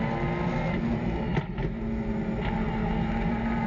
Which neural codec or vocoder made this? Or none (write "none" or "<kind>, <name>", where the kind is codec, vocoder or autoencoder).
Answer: none